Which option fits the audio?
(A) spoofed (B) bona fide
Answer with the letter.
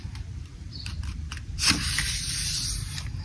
A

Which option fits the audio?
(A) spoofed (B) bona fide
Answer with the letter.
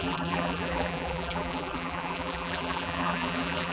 A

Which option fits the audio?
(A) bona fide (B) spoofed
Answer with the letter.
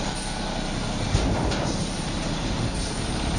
B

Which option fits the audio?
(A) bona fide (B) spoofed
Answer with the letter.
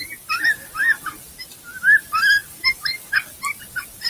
A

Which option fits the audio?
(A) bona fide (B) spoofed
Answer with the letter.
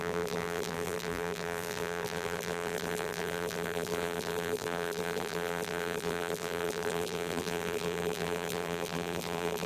B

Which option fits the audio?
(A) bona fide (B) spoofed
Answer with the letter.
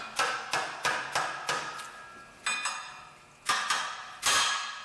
A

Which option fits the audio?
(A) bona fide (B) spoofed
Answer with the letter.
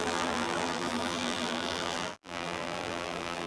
B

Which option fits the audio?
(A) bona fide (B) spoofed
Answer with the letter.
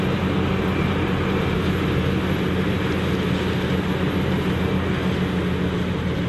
A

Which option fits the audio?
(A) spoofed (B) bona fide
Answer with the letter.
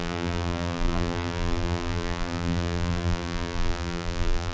A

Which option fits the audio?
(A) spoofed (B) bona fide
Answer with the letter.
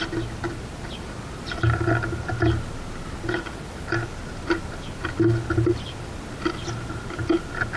B